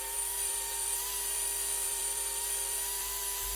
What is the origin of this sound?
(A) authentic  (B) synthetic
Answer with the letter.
B